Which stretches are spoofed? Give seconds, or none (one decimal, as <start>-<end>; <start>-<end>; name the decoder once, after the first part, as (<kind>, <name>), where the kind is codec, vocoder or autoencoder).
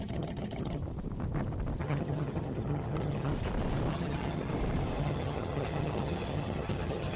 0.0-0.8 (vocoder, HiFi-GAN); 1.8-3.3; 3.9-4.5; 5.0-7.2